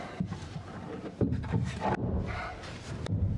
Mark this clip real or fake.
fake